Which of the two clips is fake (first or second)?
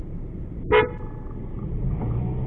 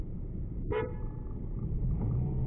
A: second